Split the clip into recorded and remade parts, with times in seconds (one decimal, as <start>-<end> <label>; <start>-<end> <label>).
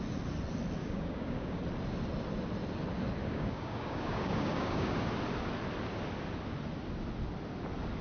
0.0-0.8 recorded; 0.8-1.6 remade; 1.6-3.2 recorded; 3.2-5.1 remade; 5.1-8.0 recorded